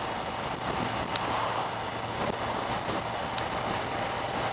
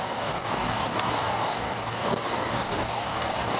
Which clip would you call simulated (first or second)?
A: second